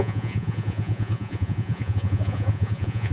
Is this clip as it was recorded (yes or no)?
no